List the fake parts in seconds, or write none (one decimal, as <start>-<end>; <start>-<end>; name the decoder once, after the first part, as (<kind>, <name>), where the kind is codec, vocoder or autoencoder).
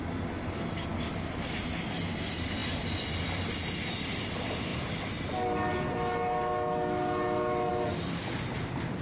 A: none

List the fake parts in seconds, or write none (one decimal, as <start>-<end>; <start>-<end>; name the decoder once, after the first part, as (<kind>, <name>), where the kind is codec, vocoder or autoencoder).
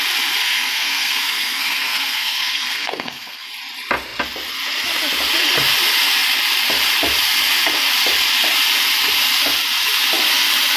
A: 0.4-3.5 (codec, SNAC)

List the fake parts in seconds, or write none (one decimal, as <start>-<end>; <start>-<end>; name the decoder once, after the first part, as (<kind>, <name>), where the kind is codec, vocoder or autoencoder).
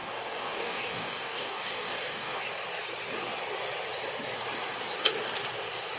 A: 0.0-2.4 (codec, DAC)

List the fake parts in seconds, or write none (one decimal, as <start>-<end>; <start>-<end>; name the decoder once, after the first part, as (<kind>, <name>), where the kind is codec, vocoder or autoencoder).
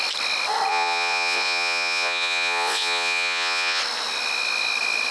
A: 0.7-3.8 (vocoder, Vocos)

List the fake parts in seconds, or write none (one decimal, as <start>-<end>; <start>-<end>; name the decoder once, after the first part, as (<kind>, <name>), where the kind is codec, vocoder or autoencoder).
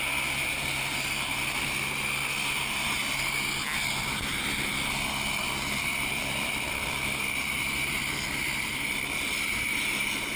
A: 5.9-9.7 (vocoder, BigVGAN v2)